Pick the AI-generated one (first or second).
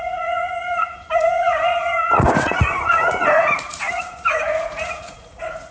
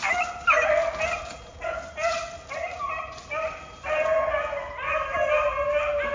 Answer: first